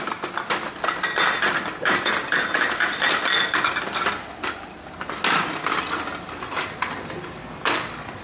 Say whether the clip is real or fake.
real